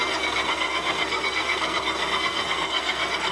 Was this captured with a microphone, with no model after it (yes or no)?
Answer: no